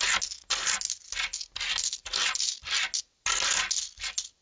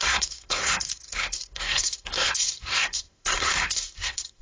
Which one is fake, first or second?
second